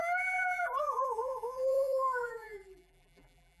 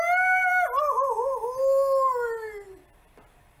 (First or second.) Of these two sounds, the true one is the second